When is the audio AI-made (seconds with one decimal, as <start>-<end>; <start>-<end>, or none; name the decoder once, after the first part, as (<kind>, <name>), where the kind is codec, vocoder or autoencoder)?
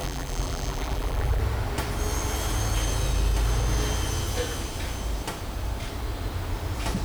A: 0.0-1.4 (vocoder, BigVGAN v2)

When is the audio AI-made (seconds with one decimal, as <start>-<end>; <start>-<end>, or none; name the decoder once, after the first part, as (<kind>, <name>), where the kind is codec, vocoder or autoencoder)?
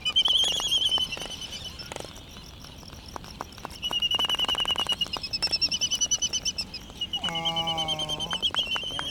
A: 0.0-1.0 (vocoder, BigVGAN v2)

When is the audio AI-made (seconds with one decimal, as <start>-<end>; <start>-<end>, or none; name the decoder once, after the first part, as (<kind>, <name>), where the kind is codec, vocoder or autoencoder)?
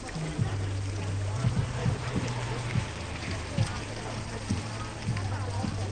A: 1.8-2.8 (vocoder, BigVGAN v2); 3.7-4.6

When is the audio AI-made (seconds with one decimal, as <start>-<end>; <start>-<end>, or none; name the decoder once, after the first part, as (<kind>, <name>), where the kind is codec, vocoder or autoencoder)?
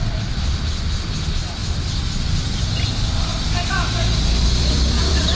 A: 0.0-1.6 (vocoder, BigVGAN v2); 2.9-3.3; 4.4-5.3